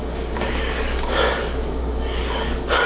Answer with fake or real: fake